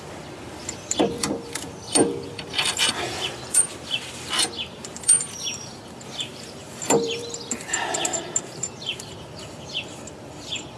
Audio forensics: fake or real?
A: fake